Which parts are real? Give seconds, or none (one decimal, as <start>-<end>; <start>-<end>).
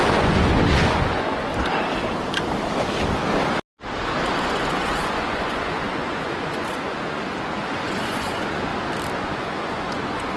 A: 1.5-4.4; 8.7-9.2